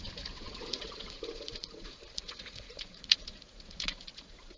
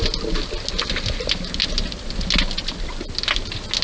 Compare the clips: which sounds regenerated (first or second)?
first